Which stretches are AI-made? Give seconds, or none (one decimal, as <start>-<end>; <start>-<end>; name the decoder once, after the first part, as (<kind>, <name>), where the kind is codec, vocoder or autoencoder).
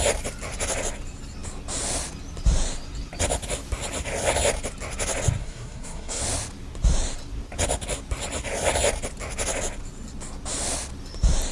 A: 5.4-6.2 (codec, SNAC)